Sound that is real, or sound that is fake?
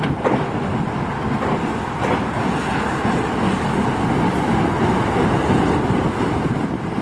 real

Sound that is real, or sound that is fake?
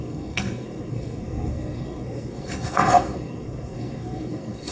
fake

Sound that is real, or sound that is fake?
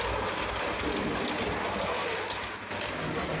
real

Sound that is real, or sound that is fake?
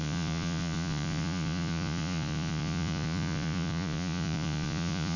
fake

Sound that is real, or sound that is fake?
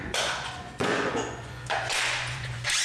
fake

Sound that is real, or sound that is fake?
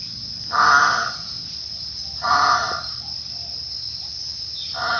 real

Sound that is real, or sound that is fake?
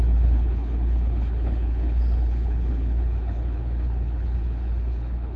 fake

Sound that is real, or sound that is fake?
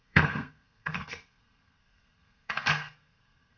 fake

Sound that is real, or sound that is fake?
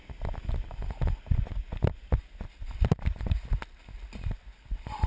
real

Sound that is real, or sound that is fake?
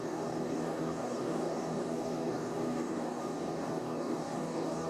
fake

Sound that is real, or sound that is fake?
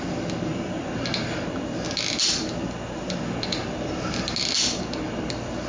real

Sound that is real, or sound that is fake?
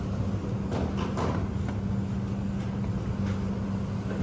real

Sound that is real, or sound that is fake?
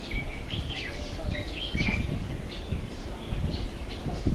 fake